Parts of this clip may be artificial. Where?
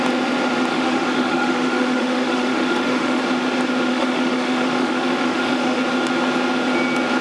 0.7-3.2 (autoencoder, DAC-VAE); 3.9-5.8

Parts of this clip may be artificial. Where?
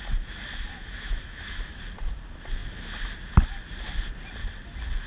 0.7-1.8 (autoencoder, DAC-VAE)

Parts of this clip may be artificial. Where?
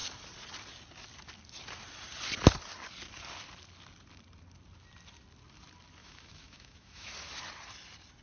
6.0-7.1 (autoencoder, DAC-VAE)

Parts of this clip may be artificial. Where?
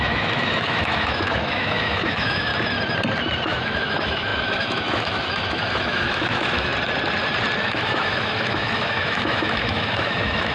0.0-2.5 (autoencoder, DAC-VAE); 3.5-6.7; 7.6-10.5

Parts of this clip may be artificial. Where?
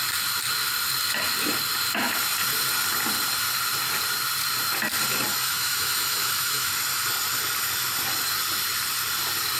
5.3-6.7 (autoencoder, DAC-VAE)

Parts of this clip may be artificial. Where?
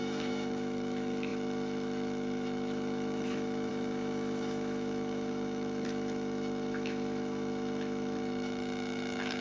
0.0-9.4 (autoencoder, DAC-VAE)